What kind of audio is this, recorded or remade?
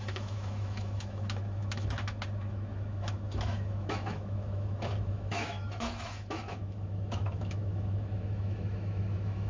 remade